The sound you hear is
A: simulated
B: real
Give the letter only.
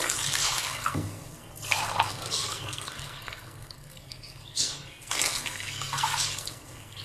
A